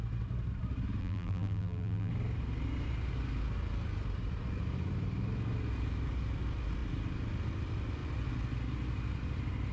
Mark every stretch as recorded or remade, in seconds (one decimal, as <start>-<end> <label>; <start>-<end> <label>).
0.0-1.0 recorded; 1.0-2.1 remade; 2.1-9.7 recorded